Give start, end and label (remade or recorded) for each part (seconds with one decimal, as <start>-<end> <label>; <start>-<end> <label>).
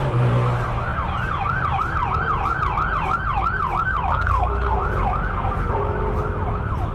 0.0-4.1 recorded; 4.1-4.8 remade; 4.8-5.3 recorded; 5.3-5.8 remade; 5.8-6.9 recorded